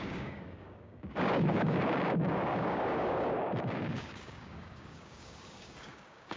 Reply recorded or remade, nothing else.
remade